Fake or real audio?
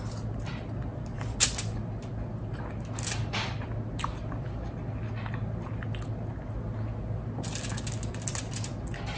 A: real